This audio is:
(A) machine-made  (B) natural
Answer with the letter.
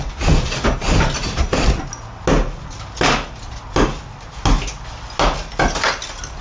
B